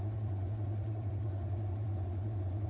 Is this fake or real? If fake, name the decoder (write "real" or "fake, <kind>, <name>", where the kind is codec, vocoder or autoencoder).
fake, vocoder, Vocos